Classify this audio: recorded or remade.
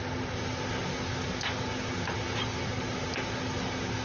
recorded